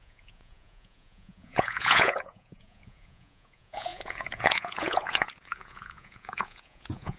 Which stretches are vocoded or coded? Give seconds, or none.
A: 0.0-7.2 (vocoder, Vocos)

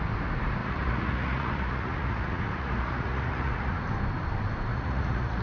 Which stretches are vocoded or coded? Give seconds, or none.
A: 0.6-3.8 (vocoder, Vocos); 4.7-5.4

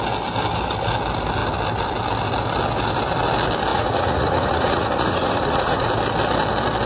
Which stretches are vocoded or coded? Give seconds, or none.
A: 3.7-5.9 (vocoder, Vocos)

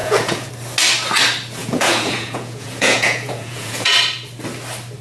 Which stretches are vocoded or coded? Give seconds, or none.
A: 0.0-0.5 (vocoder, Vocos); 1.6-3.9